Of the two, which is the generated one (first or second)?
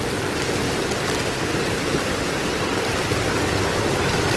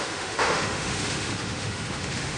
second